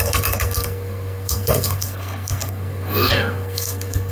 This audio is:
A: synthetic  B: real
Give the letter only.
A